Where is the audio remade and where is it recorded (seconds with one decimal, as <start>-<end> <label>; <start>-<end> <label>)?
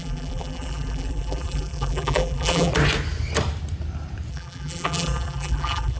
0.0-2.7 remade; 2.7-4.3 recorded; 4.3-6.0 remade